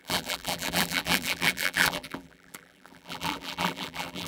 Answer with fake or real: fake